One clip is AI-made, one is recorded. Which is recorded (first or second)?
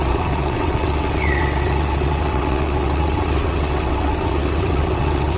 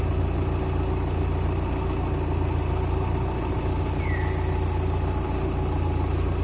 second